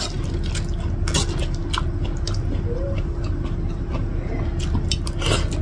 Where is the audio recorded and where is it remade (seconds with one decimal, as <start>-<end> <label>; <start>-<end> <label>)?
0.0-5.6 recorded